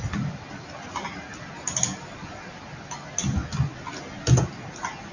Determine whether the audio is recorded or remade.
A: recorded